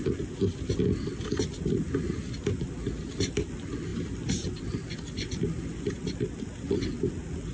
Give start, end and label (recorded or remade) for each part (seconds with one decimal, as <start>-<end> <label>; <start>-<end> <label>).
0.0-7.5 recorded